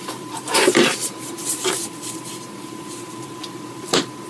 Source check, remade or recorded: remade